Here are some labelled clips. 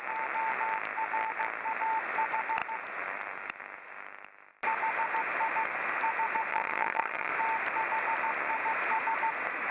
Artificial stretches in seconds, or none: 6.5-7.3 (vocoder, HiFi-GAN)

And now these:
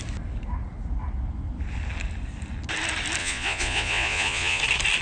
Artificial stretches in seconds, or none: 3.2-4.6 (vocoder, Vocos)

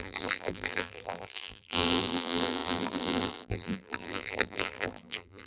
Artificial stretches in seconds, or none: 0.0-5.5 (vocoder, BigVGAN v2)

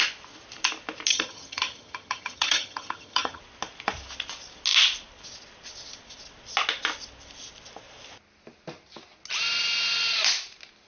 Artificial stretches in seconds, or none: 1.1-3.4 (vocoder, HiFi-GAN)

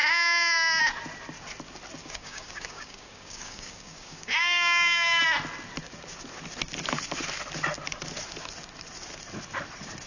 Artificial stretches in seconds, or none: 0.0-0.8 (codec, DAC); 2.0-5.2

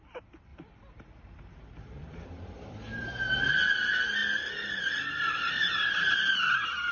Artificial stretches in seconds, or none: 0.5-3.5 (vocoder, BigVGAN v2)